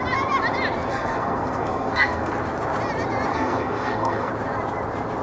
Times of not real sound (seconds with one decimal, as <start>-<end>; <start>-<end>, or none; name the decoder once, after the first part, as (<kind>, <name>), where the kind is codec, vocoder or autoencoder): 0.9-2.3 (codec, SNAC); 3.3-4.3